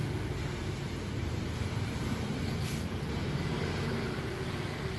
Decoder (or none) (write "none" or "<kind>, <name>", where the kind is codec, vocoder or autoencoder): vocoder, BigVGAN v2